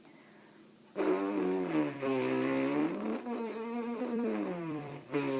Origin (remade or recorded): remade